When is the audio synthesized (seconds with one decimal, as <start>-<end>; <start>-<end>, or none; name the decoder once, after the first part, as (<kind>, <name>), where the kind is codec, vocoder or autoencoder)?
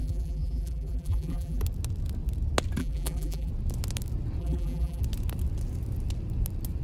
0.0-1.6 (vocoder, BigVGAN v2); 2.8-3.5; 4.4-5.0